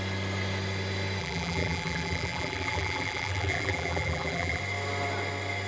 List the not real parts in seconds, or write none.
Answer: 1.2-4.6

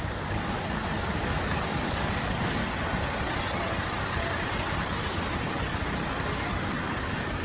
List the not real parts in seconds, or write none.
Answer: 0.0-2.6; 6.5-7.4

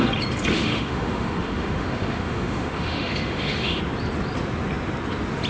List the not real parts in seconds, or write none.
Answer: 0.5-3.8

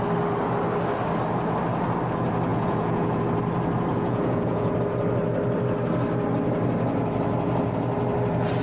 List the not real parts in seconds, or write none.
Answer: 2.5-3.2; 3.9-4.7

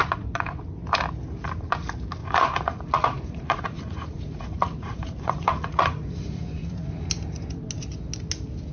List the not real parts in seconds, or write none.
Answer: 0.0-0.6; 2.2-7.1

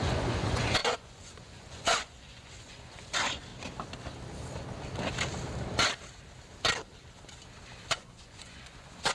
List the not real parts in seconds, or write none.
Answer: 0.0-3.5; 7.9-9.1

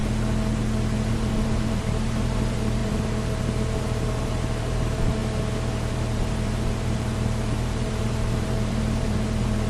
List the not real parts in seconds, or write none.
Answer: 1.1-5.2; 5.9-9.7

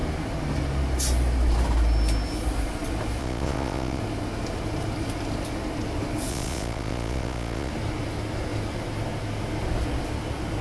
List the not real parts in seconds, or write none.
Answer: 3.2-4.0; 6.3-7.7